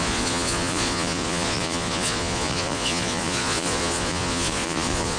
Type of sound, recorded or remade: remade